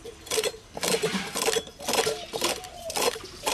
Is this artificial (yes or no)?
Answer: yes